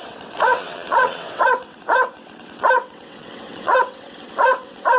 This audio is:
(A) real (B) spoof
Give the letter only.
B